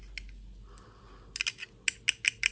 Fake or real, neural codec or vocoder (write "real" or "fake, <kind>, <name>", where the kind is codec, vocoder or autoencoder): real